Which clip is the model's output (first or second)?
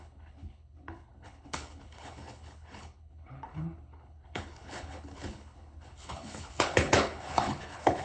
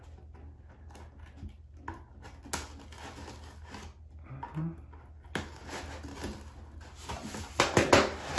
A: first